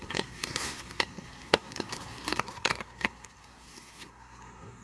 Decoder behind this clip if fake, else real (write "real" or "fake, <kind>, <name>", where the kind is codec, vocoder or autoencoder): fake, codec, SNAC